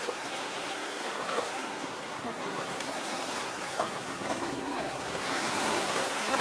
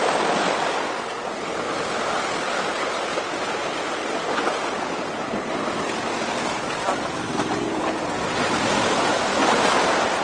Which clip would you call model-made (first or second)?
first